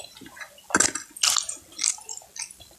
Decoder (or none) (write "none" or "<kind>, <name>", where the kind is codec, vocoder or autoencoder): none